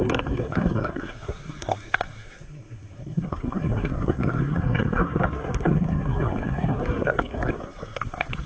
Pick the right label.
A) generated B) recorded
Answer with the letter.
A